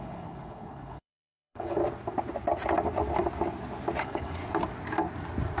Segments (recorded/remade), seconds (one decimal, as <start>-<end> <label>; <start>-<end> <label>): 0.0-1.8 remade; 1.8-4.0 recorded; 4.0-4.4 remade; 4.4-5.6 recorded